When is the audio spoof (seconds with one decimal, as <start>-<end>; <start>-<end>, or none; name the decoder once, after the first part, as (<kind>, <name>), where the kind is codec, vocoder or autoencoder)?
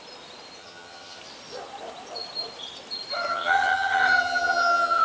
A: 0.6-1.2 (vocoder, HiFi-GAN); 3.3-5.0